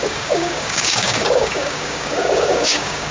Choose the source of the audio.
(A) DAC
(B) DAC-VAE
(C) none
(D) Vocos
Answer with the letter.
A